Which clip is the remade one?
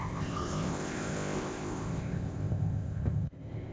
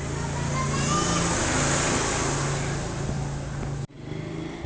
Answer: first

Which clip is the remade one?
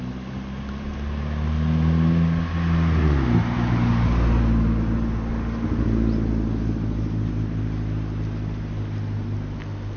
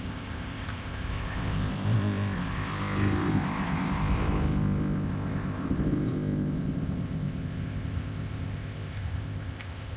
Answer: second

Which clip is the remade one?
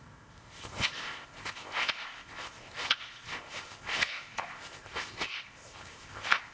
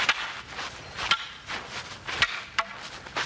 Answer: first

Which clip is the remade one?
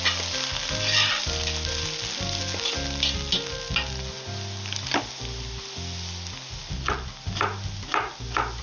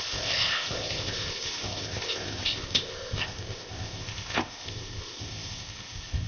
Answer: second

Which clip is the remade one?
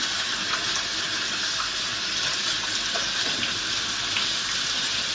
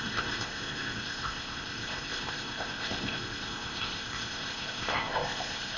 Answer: second